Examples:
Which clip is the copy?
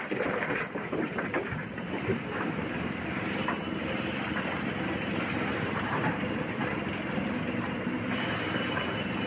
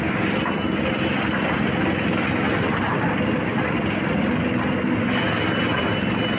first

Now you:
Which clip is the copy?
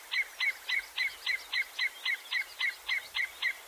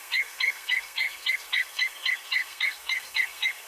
second